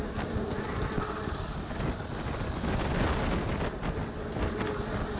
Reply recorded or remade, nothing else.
recorded